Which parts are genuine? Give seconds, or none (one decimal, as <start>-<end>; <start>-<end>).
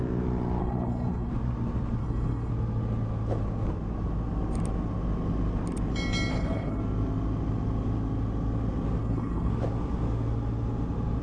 0.0-0.6; 1.3-2.0; 2.5-6.3; 6.8-9.0; 9.5-11.2